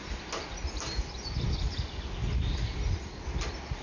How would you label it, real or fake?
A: fake